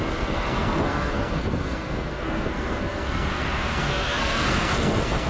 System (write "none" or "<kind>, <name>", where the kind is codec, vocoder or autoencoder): codec, SNAC